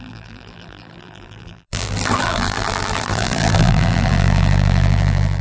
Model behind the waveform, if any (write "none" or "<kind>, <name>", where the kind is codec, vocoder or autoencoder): vocoder, BigVGAN v2